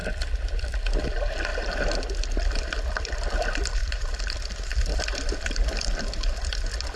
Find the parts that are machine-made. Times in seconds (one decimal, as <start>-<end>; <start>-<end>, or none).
3.8-5.0